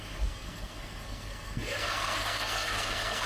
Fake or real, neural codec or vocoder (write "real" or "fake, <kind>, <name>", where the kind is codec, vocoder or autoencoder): fake, codec, SNAC